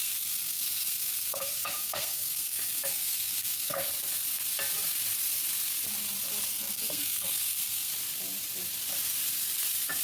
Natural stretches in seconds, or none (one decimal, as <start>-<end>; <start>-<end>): 3.9-6.5; 7.9-10.0